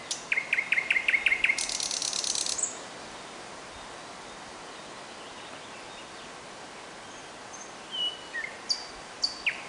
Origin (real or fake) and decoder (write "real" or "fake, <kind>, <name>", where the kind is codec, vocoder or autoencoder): real